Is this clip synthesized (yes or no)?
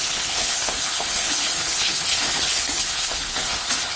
yes